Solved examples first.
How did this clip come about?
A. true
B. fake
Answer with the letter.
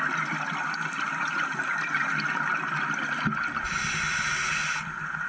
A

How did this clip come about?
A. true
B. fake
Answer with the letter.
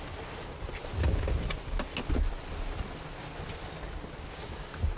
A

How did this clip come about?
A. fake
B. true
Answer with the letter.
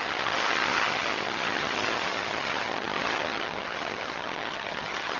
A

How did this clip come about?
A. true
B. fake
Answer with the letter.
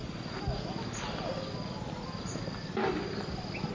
A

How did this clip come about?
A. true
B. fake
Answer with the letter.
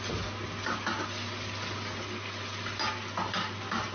A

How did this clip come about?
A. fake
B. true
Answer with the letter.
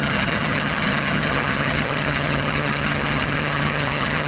A